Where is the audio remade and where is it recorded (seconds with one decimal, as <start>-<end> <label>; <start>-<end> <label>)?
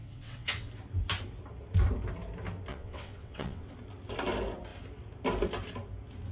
0.0-0.7 remade; 0.7-2.7 recorded; 2.7-3.7 remade; 3.7-6.3 recorded